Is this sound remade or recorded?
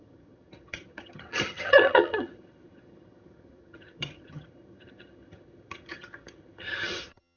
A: remade